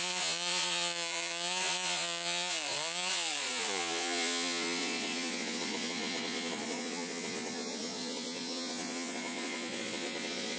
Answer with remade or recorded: remade